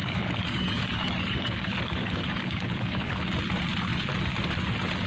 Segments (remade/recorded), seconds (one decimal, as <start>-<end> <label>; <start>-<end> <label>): 0.0-3.1 remade; 3.1-5.1 recorded